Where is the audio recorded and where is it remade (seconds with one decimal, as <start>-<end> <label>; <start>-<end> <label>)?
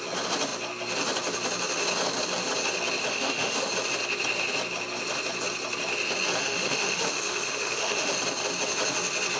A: 0.0-3.1 recorded; 3.1-3.7 remade; 3.7-6.4 recorded; 6.4-8.1 remade; 8.1-9.4 recorded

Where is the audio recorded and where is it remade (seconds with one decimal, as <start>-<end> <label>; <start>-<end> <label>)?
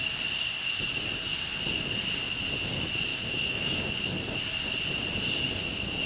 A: 0.0-3.1 recorded; 3.1-3.9 remade; 3.9-6.1 recorded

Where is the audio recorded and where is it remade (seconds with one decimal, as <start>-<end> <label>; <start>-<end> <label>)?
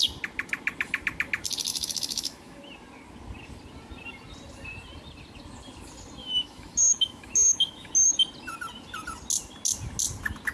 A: 0.0-1.7 recorded; 1.7-2.6 remade; 2.6-6.2 recorded; 6.2-7.9 remade; 7.9-10.5 recorded